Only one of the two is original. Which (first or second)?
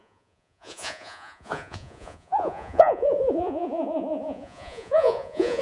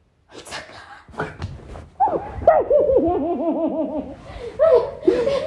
second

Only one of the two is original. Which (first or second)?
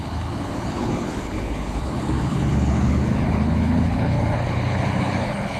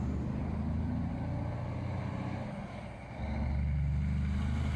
second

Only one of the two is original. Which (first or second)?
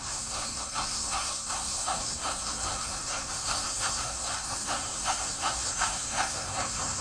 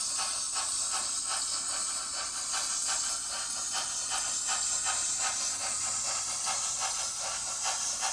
second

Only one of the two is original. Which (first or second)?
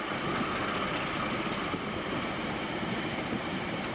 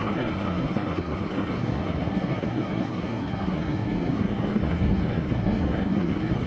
first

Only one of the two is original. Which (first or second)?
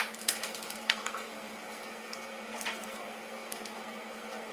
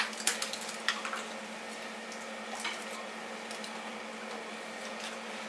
second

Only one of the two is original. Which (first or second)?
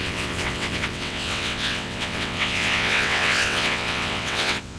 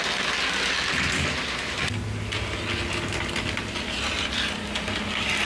second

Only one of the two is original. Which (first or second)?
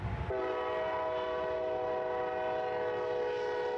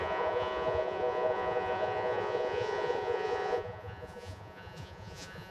first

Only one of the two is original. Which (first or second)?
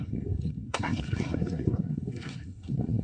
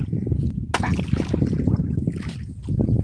second